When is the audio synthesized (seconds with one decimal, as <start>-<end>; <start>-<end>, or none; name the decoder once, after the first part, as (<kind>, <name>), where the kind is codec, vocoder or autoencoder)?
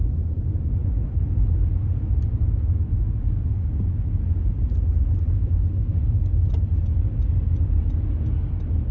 none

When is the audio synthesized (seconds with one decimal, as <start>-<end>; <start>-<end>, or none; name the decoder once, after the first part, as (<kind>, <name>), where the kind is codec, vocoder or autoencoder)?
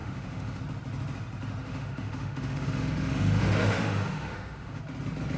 0.0-0.6 (autoencoder, DAC-VAE); 1.6-4.8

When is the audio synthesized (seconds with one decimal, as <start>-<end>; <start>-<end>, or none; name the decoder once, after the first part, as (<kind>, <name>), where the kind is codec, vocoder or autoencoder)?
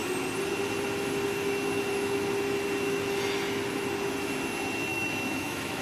4.9-5.8 (autoencoder, DAC-VAE)